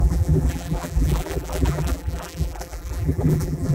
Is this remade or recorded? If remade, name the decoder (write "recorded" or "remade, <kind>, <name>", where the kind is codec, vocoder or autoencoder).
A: remade, vocoder, BigVGAN v2